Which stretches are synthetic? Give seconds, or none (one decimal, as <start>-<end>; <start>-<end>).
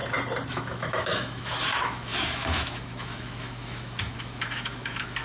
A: 0.5-5.2